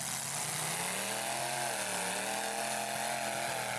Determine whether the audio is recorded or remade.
recorded